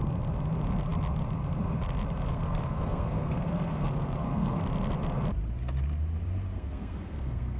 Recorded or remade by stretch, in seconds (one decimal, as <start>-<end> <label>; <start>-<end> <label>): 0.0-2.3 recorded; 2.3-4.6 remade; 4.6-6.5 recorded; 6.5-7.6 remade